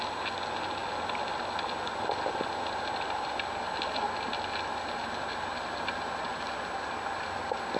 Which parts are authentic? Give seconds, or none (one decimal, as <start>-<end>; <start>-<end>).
0.0-7.8